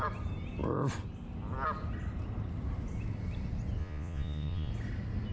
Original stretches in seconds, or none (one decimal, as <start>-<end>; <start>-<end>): 0.0-3.8; 4.7-5.3